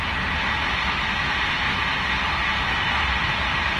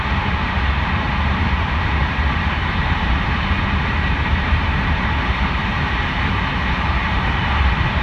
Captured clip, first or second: first